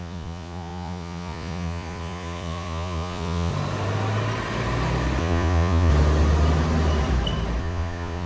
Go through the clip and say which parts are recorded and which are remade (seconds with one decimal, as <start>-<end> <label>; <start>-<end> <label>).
0.0-3.5 remade; 3.5-5.2 recorded; 5.2-5.9 remade; 5.9-7.6 recorded; 7.6-8.3 remade